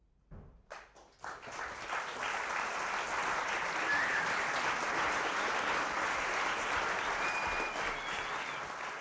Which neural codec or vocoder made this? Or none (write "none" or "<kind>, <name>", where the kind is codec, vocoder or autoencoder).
none